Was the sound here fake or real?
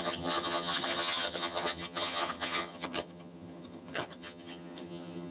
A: fake